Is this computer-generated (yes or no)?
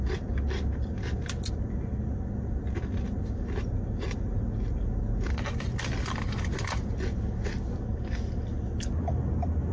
no